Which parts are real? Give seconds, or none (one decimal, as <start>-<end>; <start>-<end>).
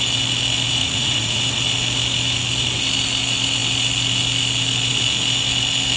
0.0-0.8; 1.4-6.0